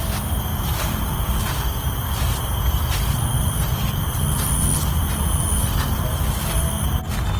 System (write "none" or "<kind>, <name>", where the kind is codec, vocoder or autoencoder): none